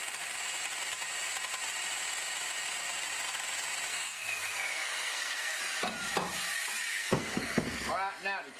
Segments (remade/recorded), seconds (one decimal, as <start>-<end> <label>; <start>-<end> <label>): 0.0-3.9 recorded; 3.9-5.6 remade; 5.6-6.9 recorded; 6.9-7.9 remade; 7.9-8.6 recorded